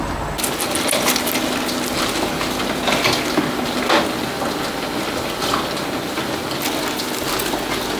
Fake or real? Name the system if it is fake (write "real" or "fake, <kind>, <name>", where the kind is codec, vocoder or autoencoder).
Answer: real